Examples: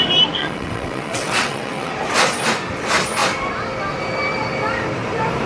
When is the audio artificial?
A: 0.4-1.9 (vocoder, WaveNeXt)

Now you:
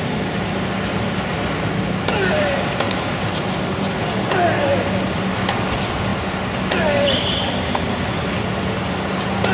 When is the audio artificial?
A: none

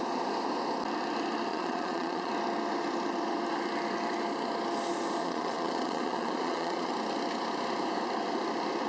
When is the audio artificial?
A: 1.5-2.3 (vocoder, Vocos); 5.2-6.9

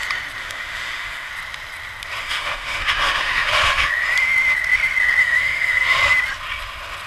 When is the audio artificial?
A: 0.4-1.3 (autoencoder, DAC-VAE); 2.2-3.9; 5.2-6.0

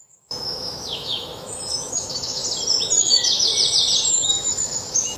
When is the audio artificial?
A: 0.0-2.4 (autoencoder, DAC-VAE); 3.0-3.5; 4.1-5.2

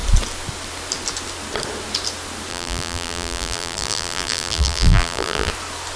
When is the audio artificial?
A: 2.5-5.5 (vocoder, BigVGAN v2)

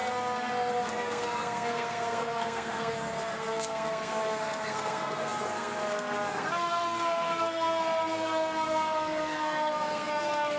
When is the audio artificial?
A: 0.0-10.6 (codec, SNAC)